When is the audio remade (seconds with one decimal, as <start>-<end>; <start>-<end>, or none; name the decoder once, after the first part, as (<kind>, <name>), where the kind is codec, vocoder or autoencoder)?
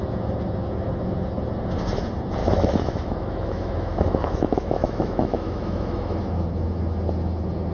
2.4-6.2 (autoencoder, DAC-VAE)